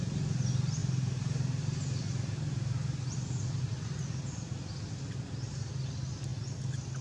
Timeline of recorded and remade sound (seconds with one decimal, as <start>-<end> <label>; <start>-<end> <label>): 0.0-7.0 recorded